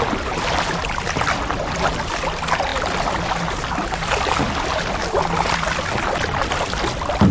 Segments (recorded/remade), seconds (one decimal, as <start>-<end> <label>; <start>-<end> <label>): 0.0-7.3 recorded